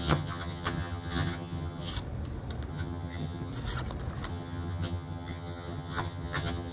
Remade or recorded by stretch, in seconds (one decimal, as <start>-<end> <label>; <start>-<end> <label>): 0.0-1.9 remade; 1.9-2.7 recorded; 2.7-3.5 remade; 3.5-4.3 recorded; 4.3-6.7 remade